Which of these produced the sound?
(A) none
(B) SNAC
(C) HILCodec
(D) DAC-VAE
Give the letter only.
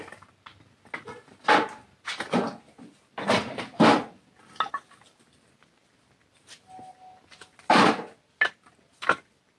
A